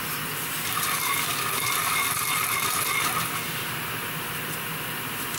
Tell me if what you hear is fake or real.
real